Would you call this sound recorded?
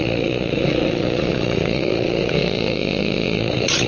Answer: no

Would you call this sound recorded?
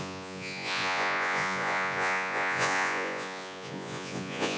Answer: no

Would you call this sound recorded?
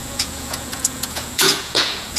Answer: no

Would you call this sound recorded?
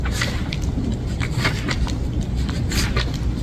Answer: yes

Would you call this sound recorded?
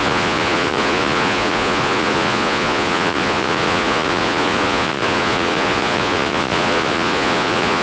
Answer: no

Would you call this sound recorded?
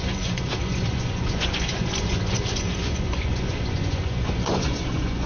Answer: no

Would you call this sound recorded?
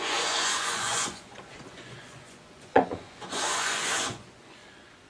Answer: no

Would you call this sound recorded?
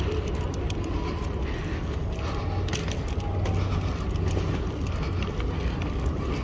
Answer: yes